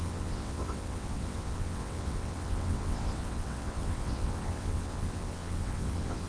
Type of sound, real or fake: fake